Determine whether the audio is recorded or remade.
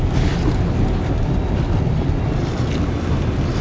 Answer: recorded